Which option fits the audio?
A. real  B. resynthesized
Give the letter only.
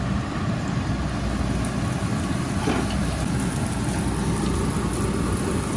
A